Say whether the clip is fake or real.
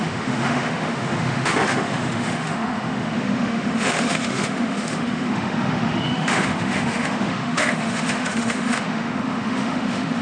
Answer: fake